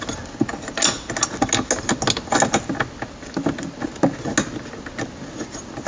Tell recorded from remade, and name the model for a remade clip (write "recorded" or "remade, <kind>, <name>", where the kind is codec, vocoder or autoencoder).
recorded